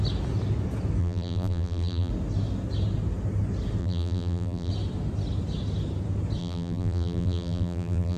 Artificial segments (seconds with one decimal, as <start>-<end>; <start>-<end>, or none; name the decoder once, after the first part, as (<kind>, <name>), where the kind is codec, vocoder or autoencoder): 1.0-2.1 (vocoder, BigVGAN v2); 3.8-4.7; 6.4-8.2